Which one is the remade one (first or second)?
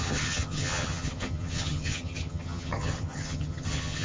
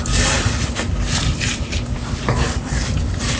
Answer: first